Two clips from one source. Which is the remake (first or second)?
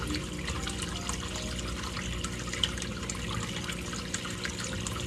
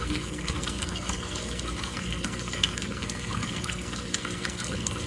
second